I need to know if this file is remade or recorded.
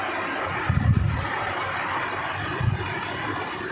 recorded